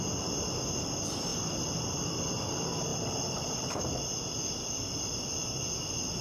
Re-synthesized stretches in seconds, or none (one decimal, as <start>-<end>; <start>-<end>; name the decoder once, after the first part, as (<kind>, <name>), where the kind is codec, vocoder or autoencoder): 1.3-2.1 (vocoder, BigVGAN v2); 2.9-3.8